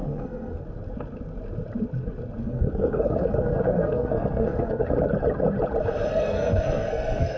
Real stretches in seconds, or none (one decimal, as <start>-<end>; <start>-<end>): 0.6-2.4; 4.8-6.1